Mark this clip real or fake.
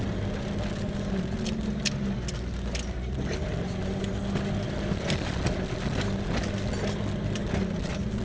real